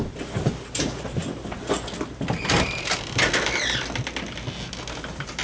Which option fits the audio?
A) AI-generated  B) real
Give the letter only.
B